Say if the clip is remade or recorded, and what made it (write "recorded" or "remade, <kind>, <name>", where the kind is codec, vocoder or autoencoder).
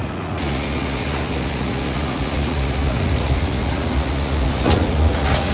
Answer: remade, vocoder, Vocos